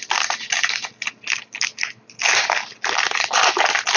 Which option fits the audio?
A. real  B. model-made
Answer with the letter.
A